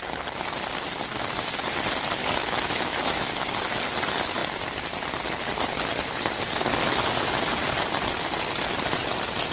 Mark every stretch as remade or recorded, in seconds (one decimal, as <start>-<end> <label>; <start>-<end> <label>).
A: 0.0-2.2 recorded; 2.2-3.3 remade; 3.3-9.5 recorded